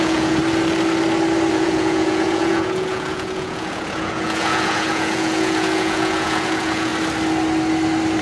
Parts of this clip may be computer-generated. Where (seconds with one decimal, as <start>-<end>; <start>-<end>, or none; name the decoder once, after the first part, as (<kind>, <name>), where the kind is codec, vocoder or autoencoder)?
0.0-0.4 (vocoder, Vocos); 1.5-6.9